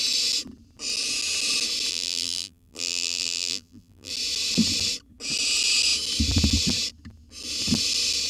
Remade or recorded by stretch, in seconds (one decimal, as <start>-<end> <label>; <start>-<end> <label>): 0.0-1.9 recorded; 1.9-4.1 remade; 4.1-8.3 recorded